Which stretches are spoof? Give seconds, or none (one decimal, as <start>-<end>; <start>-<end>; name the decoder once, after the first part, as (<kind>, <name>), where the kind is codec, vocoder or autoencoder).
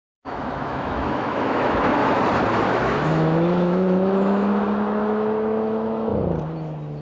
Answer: 0.0-2.0 (autoencoder, DAC-VAE); 2.7-6.1